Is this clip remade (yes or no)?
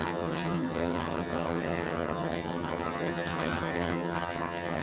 yes